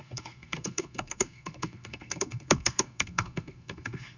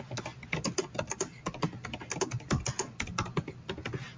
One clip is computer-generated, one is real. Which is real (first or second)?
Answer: second